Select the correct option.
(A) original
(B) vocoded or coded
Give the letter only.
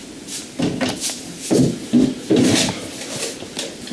A